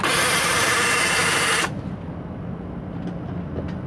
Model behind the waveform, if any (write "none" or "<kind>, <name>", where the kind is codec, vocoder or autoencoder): none